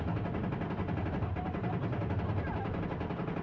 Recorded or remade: recorded